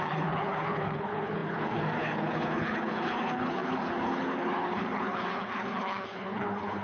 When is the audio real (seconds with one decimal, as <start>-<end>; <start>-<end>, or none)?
none